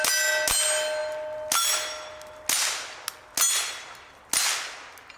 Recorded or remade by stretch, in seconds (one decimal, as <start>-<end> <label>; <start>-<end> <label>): 0.0-5.2 recorded